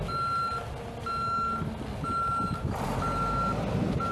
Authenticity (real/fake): real